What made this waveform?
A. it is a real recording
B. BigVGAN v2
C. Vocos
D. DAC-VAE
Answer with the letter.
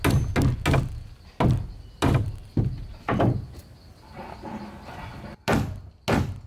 A